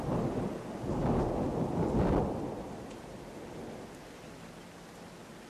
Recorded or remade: recorded